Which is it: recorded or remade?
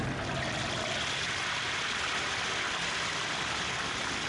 recorded